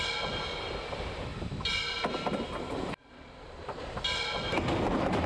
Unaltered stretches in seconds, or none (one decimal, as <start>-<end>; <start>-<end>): 0.0-5.3